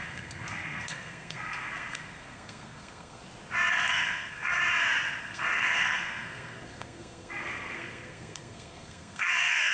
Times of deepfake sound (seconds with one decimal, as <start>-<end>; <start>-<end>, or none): 0.0-3.2; 3.7-4.6; 5.2-9.7